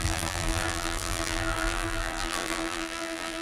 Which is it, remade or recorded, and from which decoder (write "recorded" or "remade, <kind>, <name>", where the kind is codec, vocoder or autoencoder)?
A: remade, vocoder, BigVGAN v2